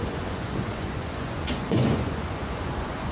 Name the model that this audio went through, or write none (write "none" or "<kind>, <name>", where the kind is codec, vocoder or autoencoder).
vocoder, Vocos